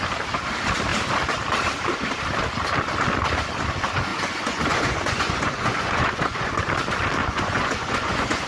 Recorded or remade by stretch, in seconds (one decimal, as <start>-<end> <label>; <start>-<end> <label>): 0.0-4.1 recorded; 4.1-6.6 remade; 6.6-7.2 recorded; 7.2-8.5 remade